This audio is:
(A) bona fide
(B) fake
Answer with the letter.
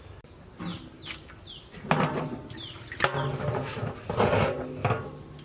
A